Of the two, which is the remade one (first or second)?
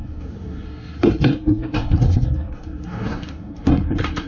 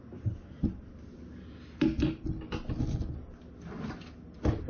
first